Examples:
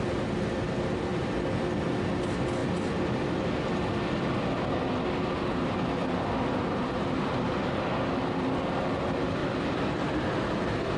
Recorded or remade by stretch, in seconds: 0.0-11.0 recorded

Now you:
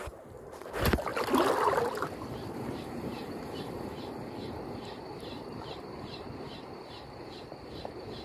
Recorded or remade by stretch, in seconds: 0.0-1.1 remade; 1.1-2.9 recorded; 2.9-8.2 remade